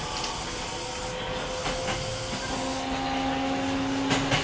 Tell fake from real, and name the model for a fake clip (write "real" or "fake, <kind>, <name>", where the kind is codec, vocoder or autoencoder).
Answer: real